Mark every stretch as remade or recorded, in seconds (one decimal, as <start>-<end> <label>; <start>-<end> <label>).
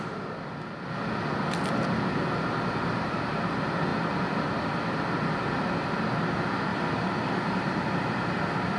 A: 0.0-6.7 recorded; 6.7-8.8 remade